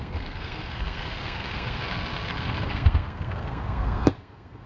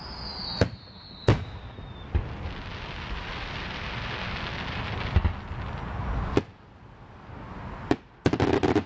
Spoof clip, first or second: first